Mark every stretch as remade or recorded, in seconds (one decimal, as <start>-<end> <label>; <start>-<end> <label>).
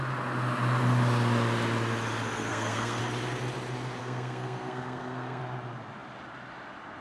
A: 0.0-2.5 recorded; 2.5-3.0 remade; 3.0-4.0 recorded; 4.0-5.4 remade; 5.4-7.0 recorded